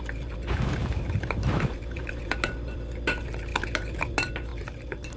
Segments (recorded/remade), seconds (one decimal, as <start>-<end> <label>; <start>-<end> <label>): 0.0-0.8 recorded; 0.8-2.2 remade; 2.2-4.5 recorded; 4.5-5.2 remade